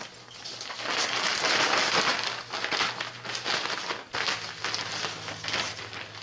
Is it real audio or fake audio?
real